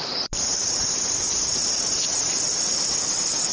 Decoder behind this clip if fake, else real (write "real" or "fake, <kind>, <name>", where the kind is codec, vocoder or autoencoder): fake, vocoder, BigVGAN v2